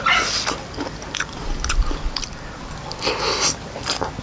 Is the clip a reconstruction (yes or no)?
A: no